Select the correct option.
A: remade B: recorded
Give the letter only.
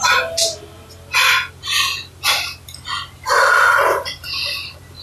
B